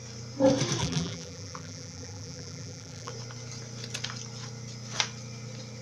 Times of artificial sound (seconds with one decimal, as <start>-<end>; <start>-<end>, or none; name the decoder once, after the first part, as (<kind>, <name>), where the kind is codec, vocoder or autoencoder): 0.8-3.1 (vocoder, BigVGAN v2)